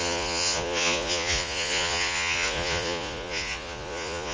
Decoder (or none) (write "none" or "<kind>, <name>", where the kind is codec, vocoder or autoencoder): vocoder, Vocos